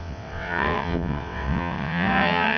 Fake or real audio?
fake